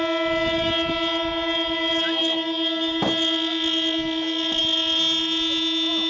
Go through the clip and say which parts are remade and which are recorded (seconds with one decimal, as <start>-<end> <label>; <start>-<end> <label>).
0.0-6.1 recorded